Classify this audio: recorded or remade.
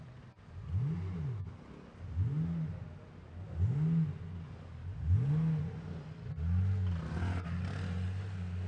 recorded